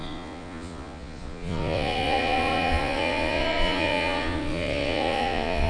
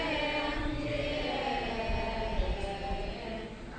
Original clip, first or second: second